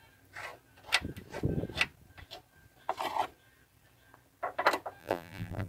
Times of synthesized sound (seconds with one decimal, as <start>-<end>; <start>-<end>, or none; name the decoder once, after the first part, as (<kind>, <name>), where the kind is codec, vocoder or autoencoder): 5.0-5.7 (vocoder, BigVGAN v2)